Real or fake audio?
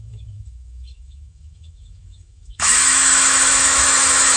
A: fake